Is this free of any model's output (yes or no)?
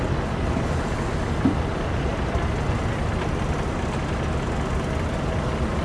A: yes